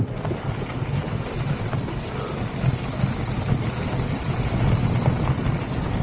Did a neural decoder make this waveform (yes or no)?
yes